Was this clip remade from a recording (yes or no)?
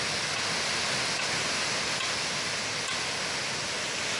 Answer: no